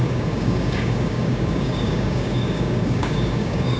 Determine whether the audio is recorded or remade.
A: remade